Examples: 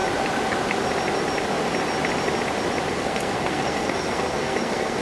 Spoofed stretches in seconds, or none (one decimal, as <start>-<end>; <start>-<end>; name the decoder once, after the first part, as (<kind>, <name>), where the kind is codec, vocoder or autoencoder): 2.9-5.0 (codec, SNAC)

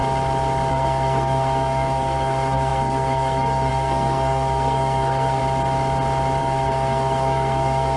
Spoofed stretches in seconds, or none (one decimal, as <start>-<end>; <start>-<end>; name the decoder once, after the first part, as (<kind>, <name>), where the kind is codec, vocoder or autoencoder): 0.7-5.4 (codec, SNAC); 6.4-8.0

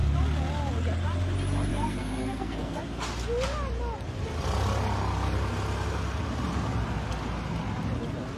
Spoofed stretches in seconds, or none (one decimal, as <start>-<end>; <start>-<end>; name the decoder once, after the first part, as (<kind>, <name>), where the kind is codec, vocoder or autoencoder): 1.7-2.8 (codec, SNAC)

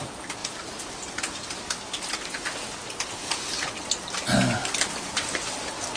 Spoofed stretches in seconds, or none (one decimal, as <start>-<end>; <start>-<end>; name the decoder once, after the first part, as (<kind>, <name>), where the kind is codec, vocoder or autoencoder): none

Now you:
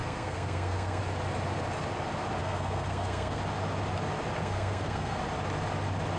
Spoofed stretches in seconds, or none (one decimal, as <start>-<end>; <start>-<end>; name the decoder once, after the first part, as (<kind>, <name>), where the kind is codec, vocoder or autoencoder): 0.0-1.0 (codec, SNAC); 2.4-3.4; 4.4-5.2